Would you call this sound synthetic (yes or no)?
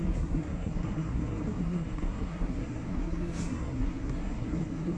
yes